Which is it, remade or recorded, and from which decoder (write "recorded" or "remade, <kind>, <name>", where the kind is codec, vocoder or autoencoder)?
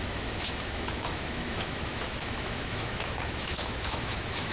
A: remade, autoencoder, DAC-VAE